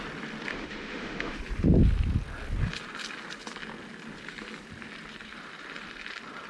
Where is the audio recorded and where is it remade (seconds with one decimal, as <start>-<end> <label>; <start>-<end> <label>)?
0.0-0.5 recorded; 0.5-1.4 remade; 1.4-6.5 recorded